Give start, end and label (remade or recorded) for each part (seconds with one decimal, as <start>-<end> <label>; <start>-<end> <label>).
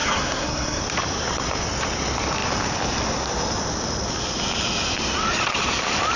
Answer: 0.0-0.8 remade; 0.8-6.2 recorded